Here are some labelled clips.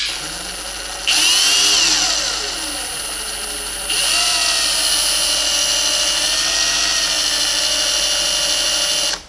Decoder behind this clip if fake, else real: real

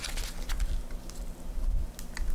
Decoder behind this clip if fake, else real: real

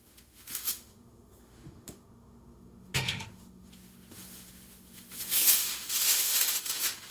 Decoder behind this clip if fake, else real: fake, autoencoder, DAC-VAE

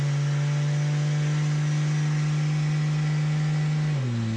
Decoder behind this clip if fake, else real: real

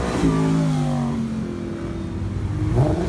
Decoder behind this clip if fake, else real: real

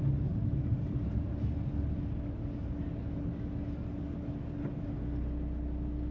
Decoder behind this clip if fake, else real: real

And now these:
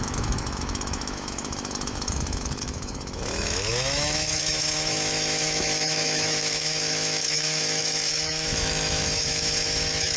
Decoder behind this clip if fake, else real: fake, autoencoder, DAC-VAE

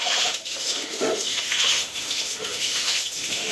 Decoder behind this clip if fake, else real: fake, autoencoder, DAC-VAE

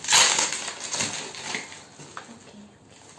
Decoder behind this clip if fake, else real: real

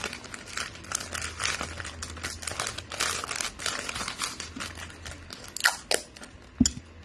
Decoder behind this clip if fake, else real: real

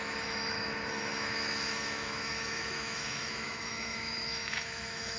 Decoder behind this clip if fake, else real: fake, autoencoder, DAC-VAE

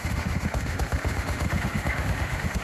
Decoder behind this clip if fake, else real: fake, autoencoder, DAC-VAE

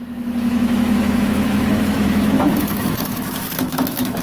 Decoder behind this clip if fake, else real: fake, autoencoder, DAC-VAE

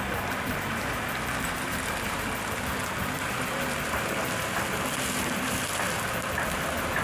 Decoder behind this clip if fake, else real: real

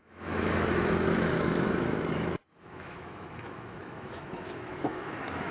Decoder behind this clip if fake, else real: fake, autoencoder, DAC-VAE